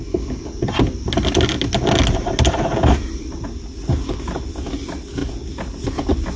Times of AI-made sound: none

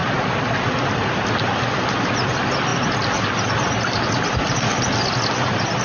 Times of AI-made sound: none

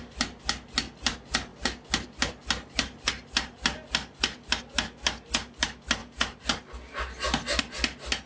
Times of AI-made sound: none

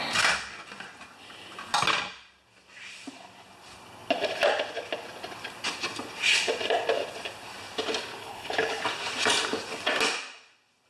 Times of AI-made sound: 8.2-8.8